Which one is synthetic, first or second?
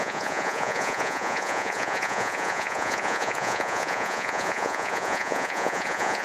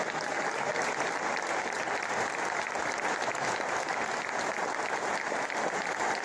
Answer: first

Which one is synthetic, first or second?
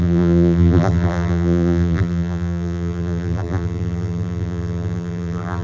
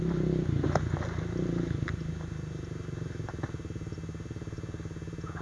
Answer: first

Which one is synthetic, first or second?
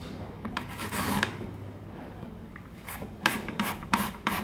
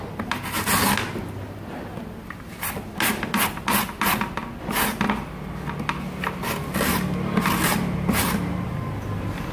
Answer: first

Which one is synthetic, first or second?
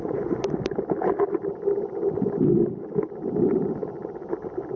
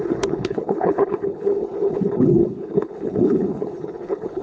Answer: second